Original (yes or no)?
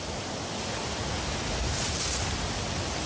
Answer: yes